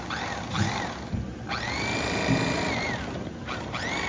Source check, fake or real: real